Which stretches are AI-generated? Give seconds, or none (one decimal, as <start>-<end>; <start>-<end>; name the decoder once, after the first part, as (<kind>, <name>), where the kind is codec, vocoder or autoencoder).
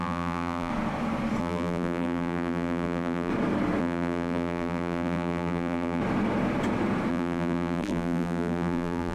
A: 0.0-0.7 (vocoder, BigVGAN v2); 1.4-3.3; 3.8-6.0; 7.1-9.1